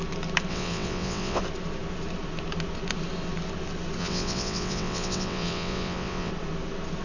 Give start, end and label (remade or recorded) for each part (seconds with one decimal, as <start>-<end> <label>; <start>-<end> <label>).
0.0-0.5 recorded; 0.5-1.4 remade; 1.4-4.0 recorded; 4.0-6.3 remade; 6.3-7.0 recorded